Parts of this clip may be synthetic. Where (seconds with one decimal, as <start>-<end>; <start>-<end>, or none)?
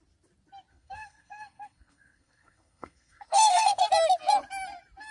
0.7-3.8